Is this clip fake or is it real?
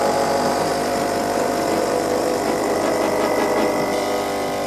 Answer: fake